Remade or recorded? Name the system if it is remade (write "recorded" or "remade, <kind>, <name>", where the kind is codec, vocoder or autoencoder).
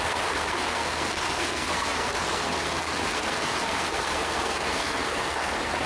remade, codec, SNAC